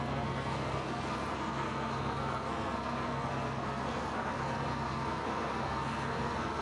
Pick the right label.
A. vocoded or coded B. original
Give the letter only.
A